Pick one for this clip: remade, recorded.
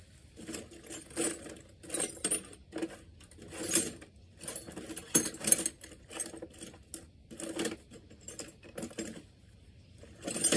recorded